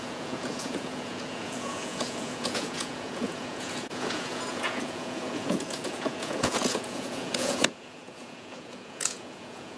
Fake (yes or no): yes